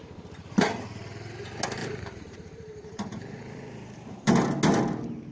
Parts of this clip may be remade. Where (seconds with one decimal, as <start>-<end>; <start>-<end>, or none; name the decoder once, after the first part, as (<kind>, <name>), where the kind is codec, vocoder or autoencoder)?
0.0-0.6 (vocoder, BigVGAN v2); 1.8-4.3